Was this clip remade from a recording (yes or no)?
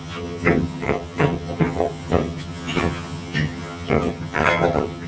yes